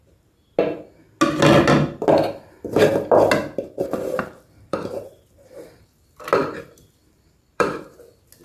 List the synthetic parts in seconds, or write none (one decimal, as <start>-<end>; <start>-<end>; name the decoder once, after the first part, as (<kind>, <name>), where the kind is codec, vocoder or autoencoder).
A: 3.4-5.9 (vocoder, BigVGAN v2); 7.0-7.9